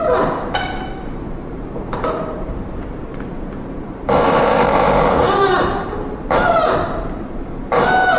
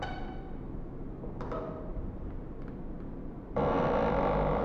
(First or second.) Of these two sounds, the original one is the second